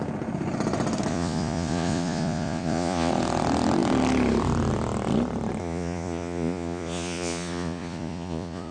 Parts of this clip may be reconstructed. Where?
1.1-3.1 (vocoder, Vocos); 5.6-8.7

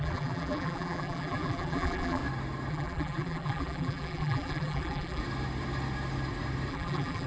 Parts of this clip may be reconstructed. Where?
0.0-2.2 (vocoder, BigVGAN v2); 2.7-5.2; 6.7-7.3

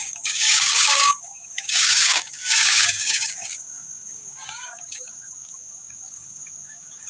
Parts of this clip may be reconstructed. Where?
0.0-7.1 (codec, DAC)

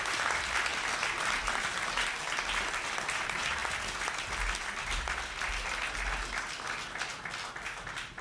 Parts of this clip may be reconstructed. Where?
none

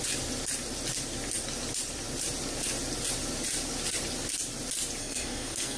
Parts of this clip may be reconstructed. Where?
5.0-5.8 (codec, SNAC)

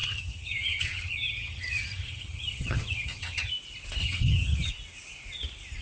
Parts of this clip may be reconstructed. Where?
0.0-3.5 (vocoder, HiFi-GAN); 4.0-4.7

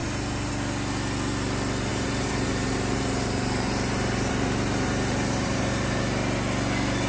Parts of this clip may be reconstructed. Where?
0.0-0.5 (vocoder, BigVGAN v2); 1.9-6.0

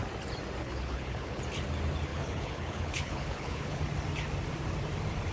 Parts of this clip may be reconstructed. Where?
0.6-1.4 (codec, HILCodec); 2.1-3.8